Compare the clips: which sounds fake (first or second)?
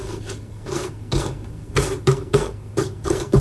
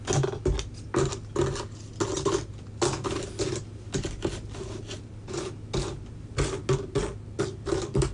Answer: first